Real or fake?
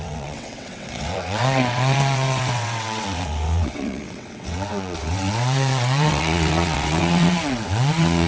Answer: fake